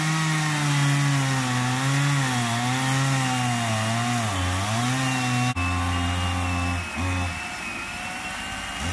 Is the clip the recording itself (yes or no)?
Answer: yes